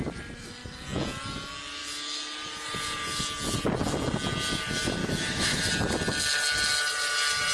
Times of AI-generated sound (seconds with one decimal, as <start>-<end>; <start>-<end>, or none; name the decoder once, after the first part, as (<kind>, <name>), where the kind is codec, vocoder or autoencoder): 5.0-5.7 (autoencoder, DAC-VAE)